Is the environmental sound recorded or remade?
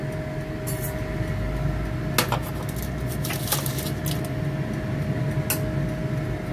recorded